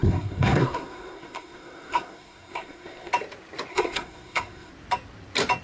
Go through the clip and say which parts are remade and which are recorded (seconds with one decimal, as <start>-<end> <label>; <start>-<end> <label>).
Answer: 0.0-3.1 remade; 3.1-3.7 recorded; 3.7-4.7 remade; 4.7-5.6 recorded